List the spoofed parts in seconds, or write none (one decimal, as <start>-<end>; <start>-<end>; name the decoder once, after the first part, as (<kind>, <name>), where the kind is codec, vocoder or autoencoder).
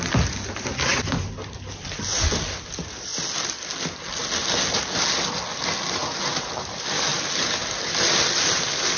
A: none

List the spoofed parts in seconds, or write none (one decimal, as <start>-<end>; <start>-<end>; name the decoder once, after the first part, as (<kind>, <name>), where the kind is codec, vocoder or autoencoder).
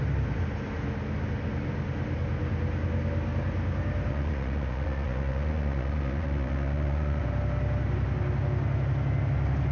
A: 4.1-7.2 (vocoder, Vocos)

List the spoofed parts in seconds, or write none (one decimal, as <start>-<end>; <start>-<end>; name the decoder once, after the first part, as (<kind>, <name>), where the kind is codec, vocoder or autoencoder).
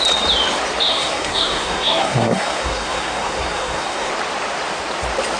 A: 0.9-4.1 (codec, SNAC)